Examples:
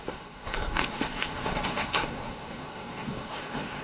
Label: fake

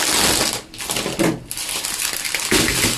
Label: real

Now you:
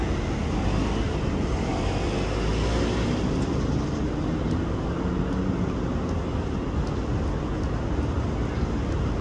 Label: real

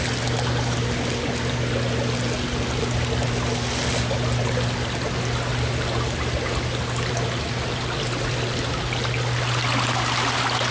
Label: real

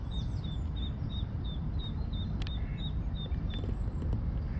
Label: real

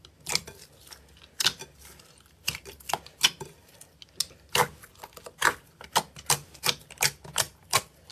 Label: real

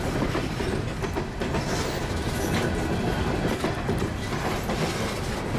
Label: real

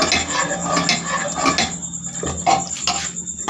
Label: real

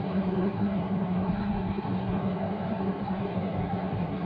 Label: fake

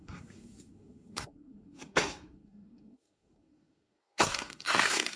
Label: fake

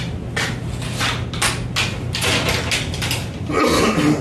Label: real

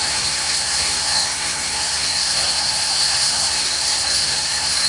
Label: fake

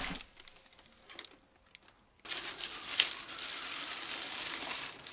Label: real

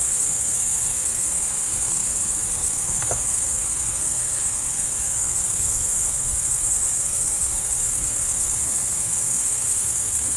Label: fake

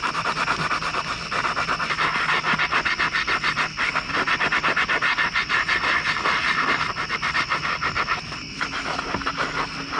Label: real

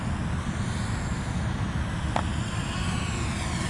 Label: real